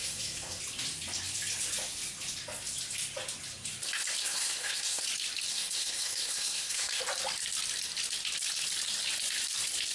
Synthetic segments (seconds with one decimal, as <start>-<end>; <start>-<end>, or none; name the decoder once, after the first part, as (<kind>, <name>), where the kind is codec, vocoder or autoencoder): 0.0-0.6 (codec, SNAC); 4.2-5.0; 5.5-7.0